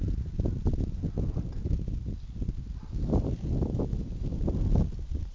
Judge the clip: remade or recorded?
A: recorded